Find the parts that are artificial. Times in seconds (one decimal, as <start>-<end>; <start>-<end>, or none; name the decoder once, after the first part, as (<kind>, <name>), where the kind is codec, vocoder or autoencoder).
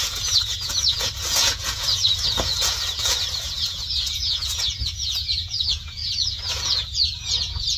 0.0-7.8 (vocoder, Vocos)